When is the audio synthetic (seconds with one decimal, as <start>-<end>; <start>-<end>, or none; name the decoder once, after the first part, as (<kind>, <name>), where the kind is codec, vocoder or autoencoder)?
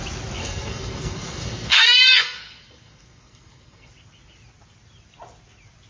0.4-3.9 (codec, SNAC)